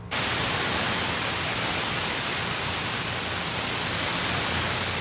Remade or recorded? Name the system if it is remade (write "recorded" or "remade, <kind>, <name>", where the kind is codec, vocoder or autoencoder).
recorded